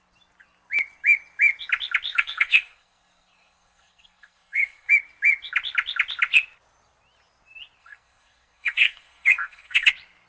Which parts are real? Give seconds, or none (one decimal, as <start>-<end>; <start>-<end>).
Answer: 0.0-2.1; 4.9-7.8; 9.9-10.3